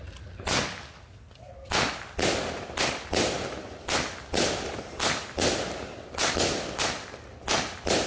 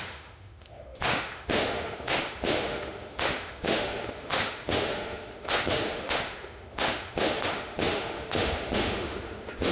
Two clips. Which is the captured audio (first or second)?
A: first